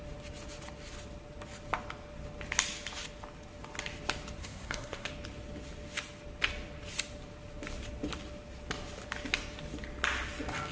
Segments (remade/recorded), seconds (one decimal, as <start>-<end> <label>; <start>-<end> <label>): 0.0-4.4 recorded; 4.4-5.1 remade; 5.1-10.7 recorded